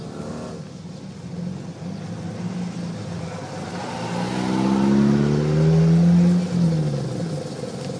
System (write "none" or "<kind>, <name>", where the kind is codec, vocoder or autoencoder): none